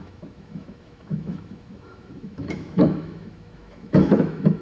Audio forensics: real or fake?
fake